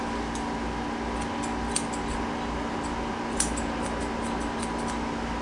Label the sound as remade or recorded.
recorded